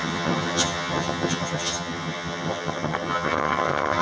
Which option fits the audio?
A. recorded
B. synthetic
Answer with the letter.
B